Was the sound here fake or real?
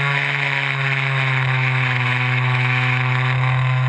fake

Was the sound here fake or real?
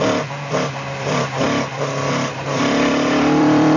fake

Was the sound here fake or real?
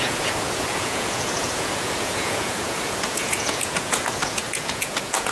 fake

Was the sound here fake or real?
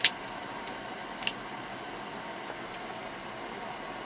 real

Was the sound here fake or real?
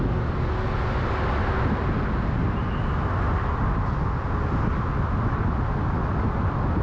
real